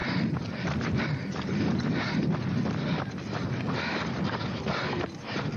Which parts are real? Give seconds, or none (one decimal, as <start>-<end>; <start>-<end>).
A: none